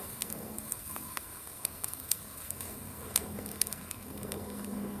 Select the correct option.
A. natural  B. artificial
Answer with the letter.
B